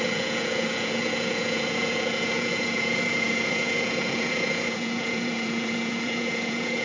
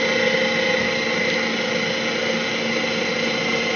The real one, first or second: second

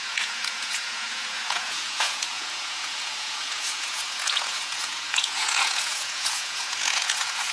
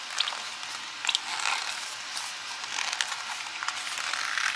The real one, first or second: second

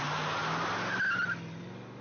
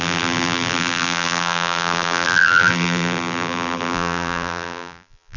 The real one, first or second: first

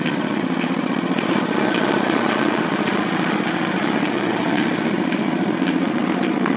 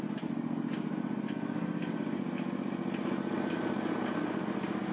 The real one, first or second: second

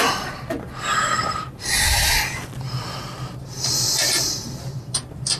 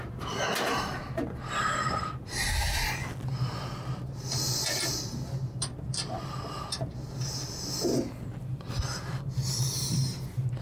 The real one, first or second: second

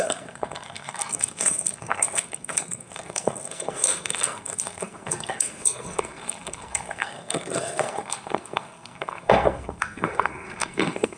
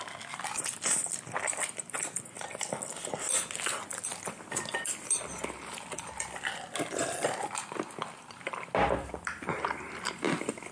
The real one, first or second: second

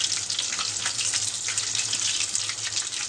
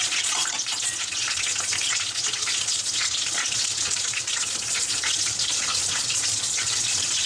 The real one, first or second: first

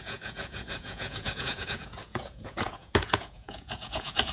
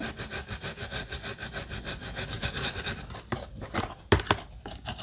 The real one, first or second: second